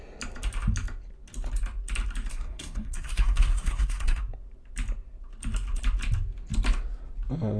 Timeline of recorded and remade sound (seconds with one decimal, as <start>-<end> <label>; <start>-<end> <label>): 0.0-2.3 recorded; 2.3-4.2 remade; 4.2-7.6 recorded